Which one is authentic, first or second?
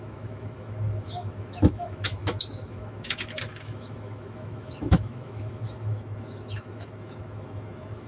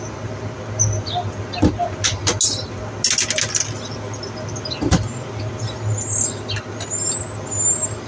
second